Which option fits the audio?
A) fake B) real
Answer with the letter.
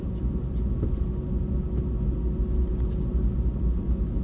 B